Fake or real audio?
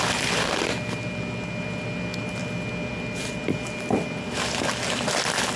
real